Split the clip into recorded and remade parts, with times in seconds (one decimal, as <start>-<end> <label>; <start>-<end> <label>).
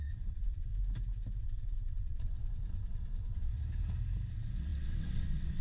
0.0-0.7 remade; 0.7-1.4 recorded; 1.4-3.5 remade; 3.5-4.3 recorded; 4.3-5.6 remade